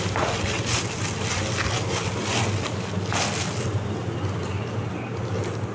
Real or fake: real